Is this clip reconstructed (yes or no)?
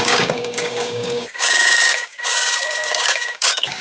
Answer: yes